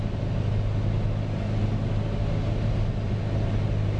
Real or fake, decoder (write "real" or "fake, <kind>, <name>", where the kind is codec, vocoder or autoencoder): real